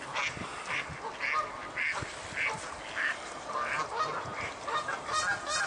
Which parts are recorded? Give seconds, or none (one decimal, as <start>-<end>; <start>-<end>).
0.0-4.3; 5.0-5.7